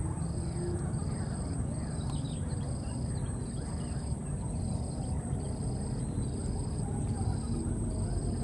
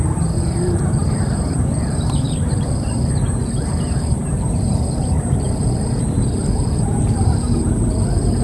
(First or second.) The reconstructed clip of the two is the second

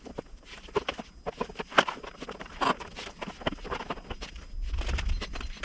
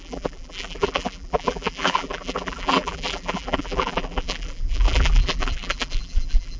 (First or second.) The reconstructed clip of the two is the second